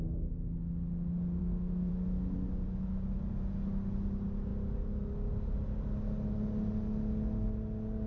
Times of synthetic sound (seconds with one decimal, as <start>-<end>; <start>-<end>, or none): 1.4-1.9